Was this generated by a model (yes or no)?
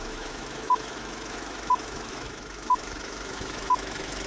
yes